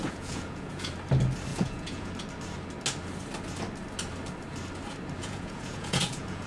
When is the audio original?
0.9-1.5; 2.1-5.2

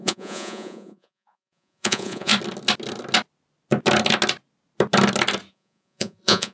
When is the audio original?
2.3-5.5

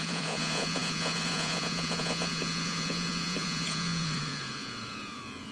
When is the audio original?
none

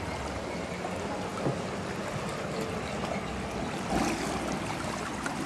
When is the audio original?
0.0-5.5

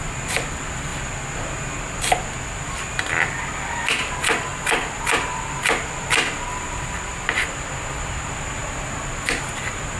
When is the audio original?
0.0-10.0

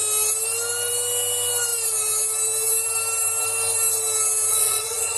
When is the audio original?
0.0-4.5

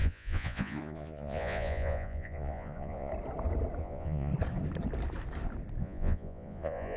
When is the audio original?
3.1-3.8; 4.3-5.8

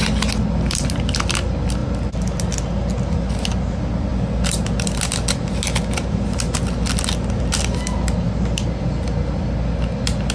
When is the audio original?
0.0-10.3